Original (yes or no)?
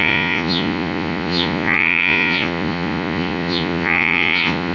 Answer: no